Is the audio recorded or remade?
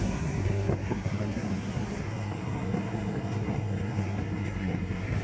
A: remade